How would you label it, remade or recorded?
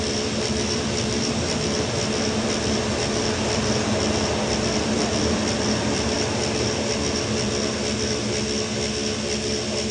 remade